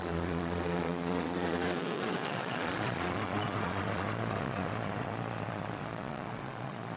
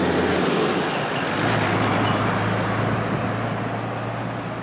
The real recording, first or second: second